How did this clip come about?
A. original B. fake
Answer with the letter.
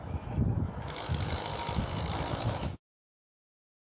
B